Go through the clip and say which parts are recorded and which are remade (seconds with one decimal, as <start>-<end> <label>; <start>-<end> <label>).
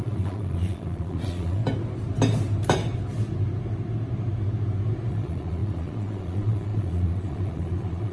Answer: 0.0-1.6 remade; 1.6-5.1 recorded; 5.1-8.1 remade